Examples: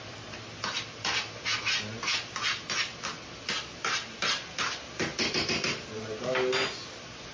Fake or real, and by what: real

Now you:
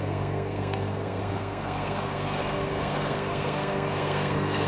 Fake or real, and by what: fake, codec, SNAC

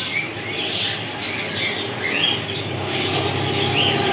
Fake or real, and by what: real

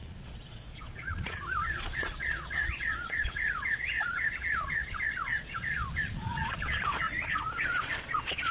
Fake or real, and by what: fake, vocoder, Vocos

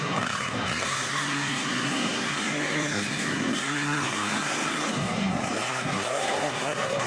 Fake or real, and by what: fake, codec, SNAC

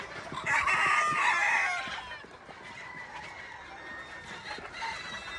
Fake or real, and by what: real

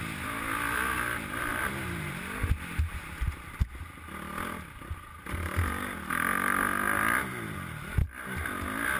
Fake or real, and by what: real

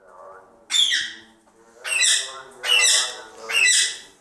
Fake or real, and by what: real